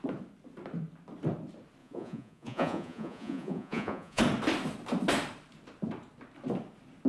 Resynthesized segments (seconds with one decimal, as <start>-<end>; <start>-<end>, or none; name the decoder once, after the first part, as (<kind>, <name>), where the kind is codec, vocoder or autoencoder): 1.8-4.2 (vocoder, Vocos)